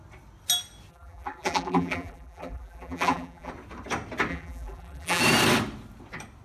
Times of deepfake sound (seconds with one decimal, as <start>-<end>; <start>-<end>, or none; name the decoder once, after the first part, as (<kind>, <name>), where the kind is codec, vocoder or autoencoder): 0.9-3.5 (vocoder, BigVGAN v2); 4.3-5.2